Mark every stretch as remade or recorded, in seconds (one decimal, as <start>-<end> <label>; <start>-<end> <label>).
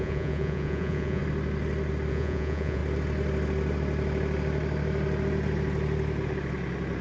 0.0-1.2 remade; 1.2-2.1 recorded; 2.1-2.8 remade; 2.8-7.0 recorded